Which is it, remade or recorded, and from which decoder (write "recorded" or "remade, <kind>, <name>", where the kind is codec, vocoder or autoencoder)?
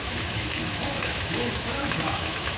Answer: remade, autoencoder, DAC-VAE